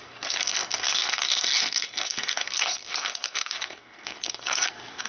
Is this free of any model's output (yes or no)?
no